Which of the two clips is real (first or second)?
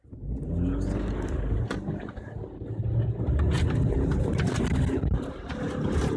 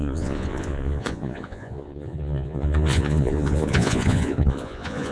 first